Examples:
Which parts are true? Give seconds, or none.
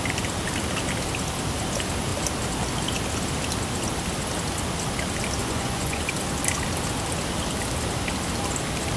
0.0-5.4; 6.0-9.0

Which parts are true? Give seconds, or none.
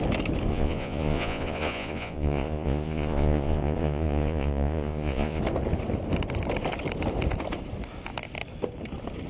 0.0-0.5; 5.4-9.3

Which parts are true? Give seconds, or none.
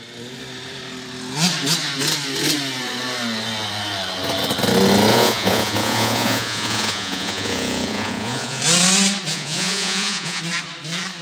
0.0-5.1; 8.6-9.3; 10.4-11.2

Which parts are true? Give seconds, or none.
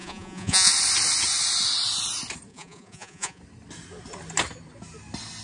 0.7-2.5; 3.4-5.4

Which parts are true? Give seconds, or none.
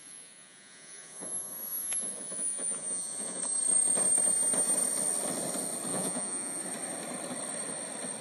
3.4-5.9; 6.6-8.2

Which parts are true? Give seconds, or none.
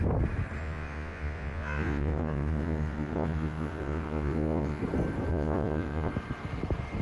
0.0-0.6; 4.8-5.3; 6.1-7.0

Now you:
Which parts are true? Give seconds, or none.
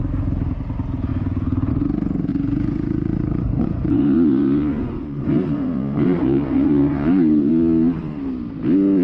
0.0-1.1; 1.7-2.3; 7.5-9.0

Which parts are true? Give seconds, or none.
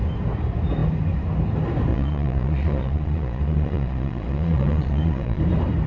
0.0-1.9; 5.4-5.9